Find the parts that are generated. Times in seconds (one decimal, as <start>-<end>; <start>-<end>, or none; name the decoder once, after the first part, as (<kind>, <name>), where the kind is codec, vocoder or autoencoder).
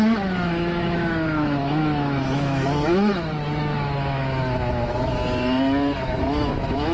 0.0-5.2 (autoencoder, DAC-VAE); 6.2-6.9